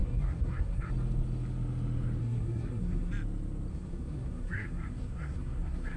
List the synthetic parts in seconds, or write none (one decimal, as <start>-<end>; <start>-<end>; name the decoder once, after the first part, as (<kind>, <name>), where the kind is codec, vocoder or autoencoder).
0.0-0.9 (codec, SNAC); 2.2-3.1; 3.7-6.0